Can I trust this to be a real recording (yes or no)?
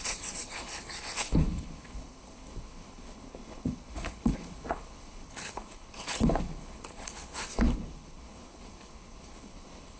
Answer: no